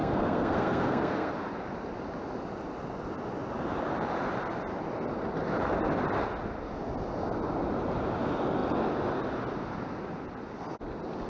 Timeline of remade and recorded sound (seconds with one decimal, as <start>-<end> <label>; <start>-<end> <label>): 0.0-1.3 remade; 1.3-11.3 recorded